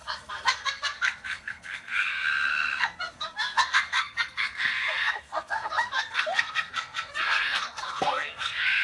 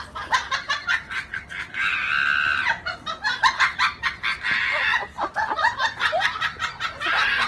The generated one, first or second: first